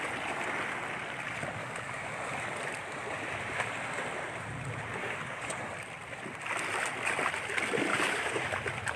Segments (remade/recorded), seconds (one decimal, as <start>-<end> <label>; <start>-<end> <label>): 0.0-1.6 recorded; 1.6-2.1 remade; 2.1-5.0 recorded; 5.0-5.6 remade; 5.6-7.9 recorded; 7.9-8.5 remade; 8.5-9.0 recorded